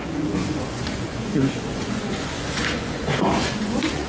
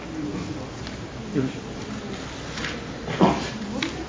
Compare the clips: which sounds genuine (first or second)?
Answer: second